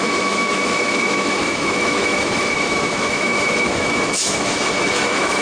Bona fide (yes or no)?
no